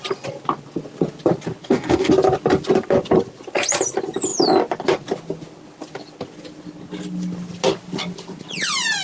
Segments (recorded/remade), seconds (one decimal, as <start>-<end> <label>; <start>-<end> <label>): 0.0-1.6 recorded; 1.6-2.1 remade; 2.1-9.0 recorded